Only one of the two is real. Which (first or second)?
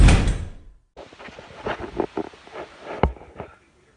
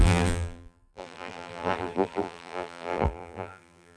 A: first